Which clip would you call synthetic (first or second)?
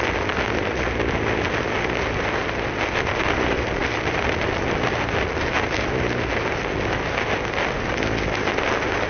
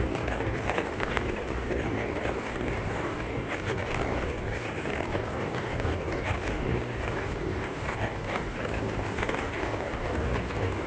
second